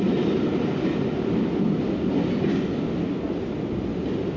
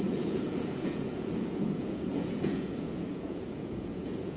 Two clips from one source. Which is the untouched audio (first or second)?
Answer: first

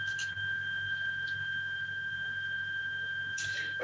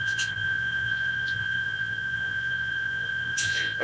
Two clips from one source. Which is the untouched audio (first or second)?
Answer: first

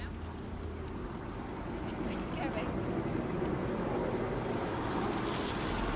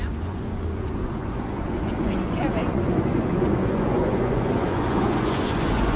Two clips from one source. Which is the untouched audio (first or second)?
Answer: first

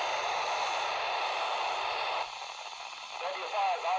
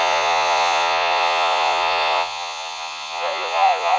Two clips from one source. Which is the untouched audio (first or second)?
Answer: first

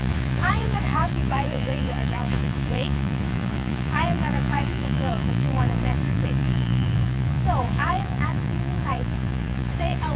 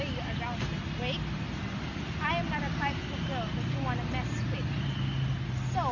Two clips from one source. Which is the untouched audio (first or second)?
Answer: second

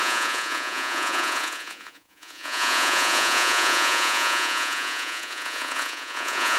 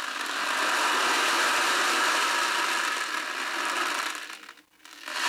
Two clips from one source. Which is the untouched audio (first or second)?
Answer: second